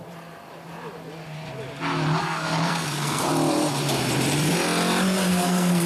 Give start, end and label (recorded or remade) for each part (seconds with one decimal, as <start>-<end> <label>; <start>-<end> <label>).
0.0-2.2 recorded; 2.2-3.3 remade; 3.3-5.3 recorded; 5.3-5.9 remade